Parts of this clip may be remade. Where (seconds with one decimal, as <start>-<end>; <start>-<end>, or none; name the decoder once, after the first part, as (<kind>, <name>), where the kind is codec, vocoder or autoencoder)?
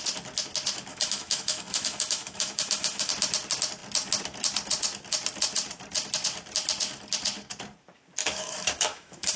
0.9-3.1 (autoencoder, DAC-VAE); 8.2-9.4